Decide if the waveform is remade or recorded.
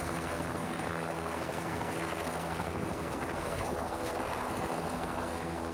remade